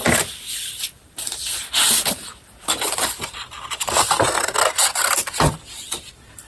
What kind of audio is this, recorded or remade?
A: recorded